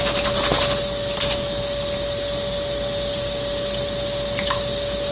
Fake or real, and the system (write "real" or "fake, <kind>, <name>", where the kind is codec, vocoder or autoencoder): real